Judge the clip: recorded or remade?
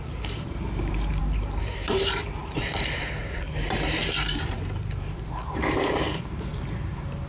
remade